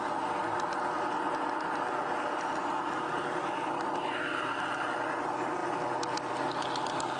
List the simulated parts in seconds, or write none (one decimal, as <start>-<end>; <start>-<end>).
none